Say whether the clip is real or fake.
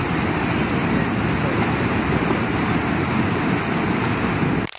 fake